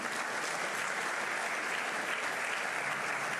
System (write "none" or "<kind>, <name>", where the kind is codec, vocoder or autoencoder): none